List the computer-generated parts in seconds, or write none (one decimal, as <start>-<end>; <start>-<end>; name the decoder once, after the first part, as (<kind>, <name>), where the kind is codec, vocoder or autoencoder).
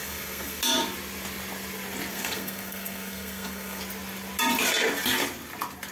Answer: 0.0-0.6 (codec, SNAC); 2.1-3.8